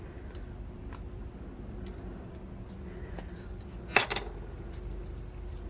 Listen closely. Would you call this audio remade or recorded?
recorded